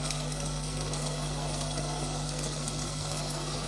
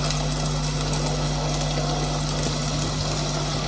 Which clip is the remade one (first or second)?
first